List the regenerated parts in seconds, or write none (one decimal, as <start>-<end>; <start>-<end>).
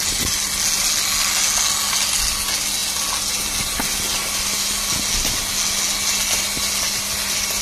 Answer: none